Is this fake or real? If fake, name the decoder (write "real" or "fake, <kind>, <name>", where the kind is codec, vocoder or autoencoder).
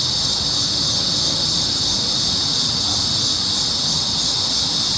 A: fake, vocoder, WaveNeXt